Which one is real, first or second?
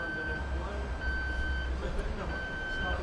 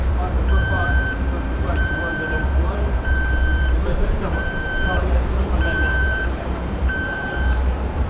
first